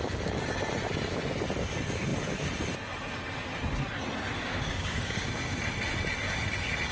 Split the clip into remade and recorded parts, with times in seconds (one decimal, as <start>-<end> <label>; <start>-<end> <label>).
0.0-4.3 recorded; 4.3-5.3 remade; 5.3-6.9 recorded